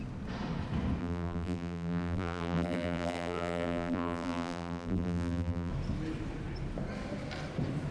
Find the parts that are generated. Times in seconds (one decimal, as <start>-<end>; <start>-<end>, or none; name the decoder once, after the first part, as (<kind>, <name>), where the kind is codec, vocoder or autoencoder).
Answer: 1.0-5.7 (vocoder, BigVGAN v2)

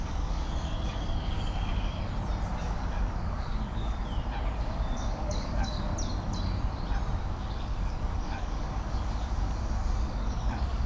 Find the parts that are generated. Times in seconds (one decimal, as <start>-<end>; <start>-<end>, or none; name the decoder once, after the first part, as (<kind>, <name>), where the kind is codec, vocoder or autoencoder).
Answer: 0.0-2.0 (codec, DAC); 2.6-4.0; 4.6-5.9; 7.2-10.9

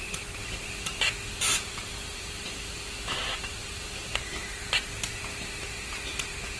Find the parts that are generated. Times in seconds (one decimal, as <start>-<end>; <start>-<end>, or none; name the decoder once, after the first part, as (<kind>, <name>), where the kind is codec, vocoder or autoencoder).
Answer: none